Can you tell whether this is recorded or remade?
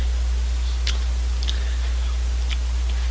recorded